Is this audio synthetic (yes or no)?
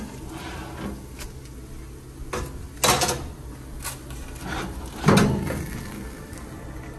no